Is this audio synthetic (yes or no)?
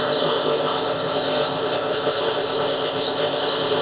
yes